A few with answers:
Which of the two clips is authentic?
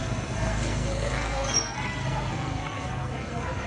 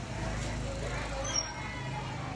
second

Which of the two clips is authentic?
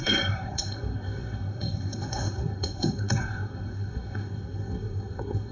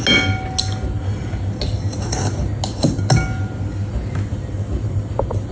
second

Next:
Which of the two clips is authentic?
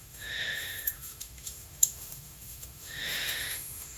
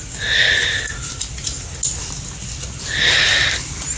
second